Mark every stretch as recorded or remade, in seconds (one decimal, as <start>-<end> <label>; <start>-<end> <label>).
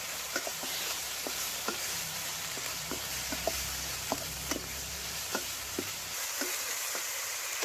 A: 0.0-7.6 remade